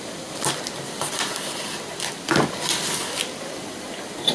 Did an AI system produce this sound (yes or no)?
yes